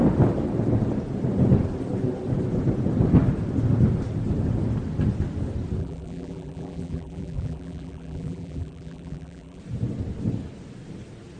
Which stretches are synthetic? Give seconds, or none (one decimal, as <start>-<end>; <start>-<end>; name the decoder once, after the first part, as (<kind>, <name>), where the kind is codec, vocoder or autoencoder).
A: 5.8-9.6 (vocoder, BigVGAN v2)